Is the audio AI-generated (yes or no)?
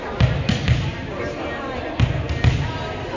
no